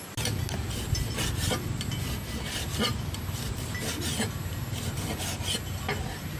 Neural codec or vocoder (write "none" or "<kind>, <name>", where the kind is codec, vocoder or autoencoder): none